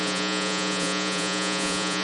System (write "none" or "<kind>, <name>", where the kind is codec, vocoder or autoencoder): vocoder, Vocos